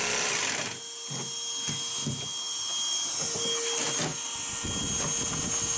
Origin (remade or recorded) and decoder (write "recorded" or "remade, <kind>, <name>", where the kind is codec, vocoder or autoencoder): recorded